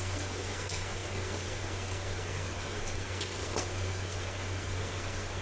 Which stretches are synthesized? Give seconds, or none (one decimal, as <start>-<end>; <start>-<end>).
0.0-5.4